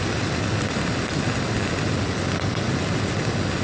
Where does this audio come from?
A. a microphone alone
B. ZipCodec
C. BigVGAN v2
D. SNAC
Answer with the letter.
A